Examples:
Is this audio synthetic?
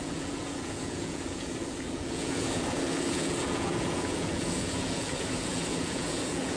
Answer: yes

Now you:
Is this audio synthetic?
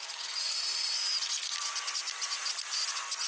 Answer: no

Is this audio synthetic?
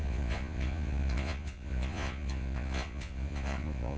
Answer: yes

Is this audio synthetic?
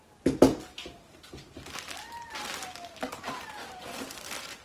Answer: no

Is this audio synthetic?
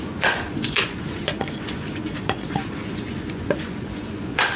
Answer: yes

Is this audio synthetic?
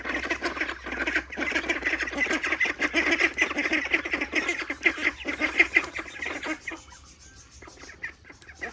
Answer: no